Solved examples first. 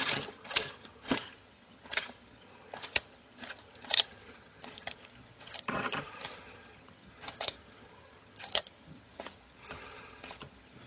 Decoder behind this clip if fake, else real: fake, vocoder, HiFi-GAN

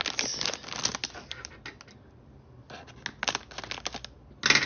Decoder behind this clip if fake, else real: real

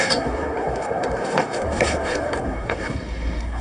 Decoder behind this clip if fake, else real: fake, codec, SNAC